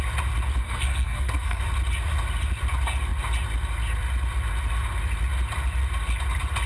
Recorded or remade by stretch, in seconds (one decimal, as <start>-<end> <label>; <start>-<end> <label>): 0.0-0.6 recorded; 0.6-1.6 remade; 1.6-6.7 recorded